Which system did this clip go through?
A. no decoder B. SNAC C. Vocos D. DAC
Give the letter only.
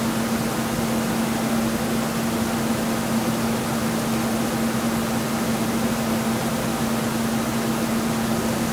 A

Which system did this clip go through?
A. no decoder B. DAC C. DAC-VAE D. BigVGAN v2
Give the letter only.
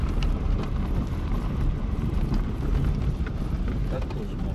D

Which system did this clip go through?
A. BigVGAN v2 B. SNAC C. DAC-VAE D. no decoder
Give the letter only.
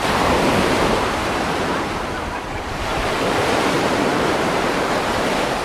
A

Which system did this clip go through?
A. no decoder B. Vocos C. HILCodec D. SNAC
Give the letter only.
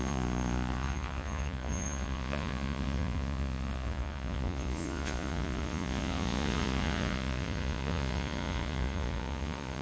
B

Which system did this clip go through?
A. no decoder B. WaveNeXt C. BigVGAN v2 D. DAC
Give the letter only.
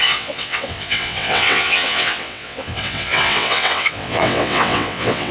B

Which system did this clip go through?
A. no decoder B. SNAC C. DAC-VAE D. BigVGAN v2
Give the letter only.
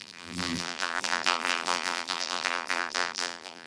D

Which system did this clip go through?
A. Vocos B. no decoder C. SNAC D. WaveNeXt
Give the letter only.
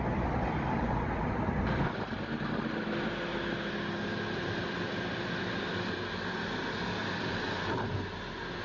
B